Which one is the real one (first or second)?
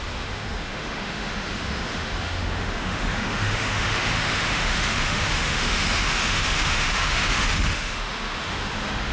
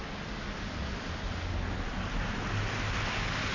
second